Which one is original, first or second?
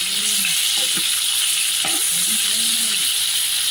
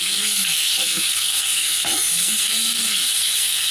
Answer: first